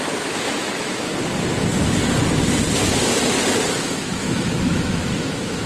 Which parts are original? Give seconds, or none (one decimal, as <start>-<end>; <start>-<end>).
1.1-3.7